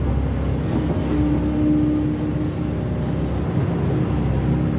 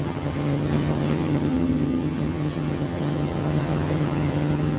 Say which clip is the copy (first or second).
second